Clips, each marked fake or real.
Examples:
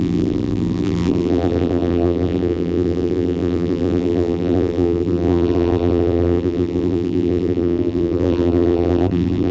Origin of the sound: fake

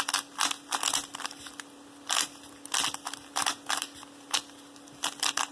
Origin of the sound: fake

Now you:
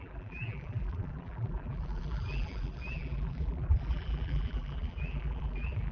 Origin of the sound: fake